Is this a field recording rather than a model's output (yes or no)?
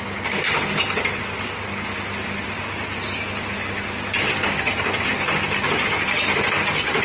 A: yes